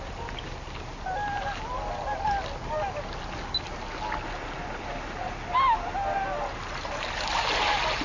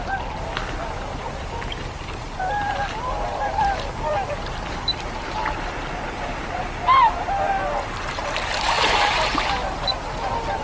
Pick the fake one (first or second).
second